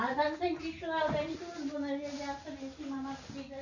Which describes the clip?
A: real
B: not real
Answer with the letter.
A